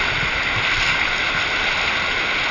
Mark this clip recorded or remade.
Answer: recorded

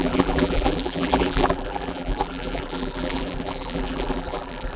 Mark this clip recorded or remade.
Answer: remade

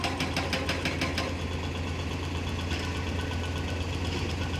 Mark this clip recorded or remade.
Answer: recorded